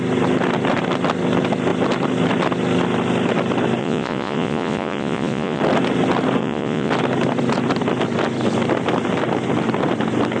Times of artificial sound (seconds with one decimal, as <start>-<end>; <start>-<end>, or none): 3.8-5.6; 6.4-6.9